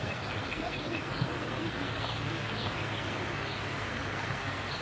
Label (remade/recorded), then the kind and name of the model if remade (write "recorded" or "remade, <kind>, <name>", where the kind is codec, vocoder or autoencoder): remade, codec, SNAC